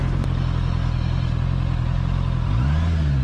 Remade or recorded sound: recorded